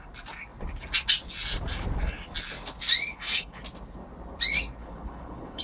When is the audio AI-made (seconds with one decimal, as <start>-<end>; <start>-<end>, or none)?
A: 3.1-3.6; 4.8-5.6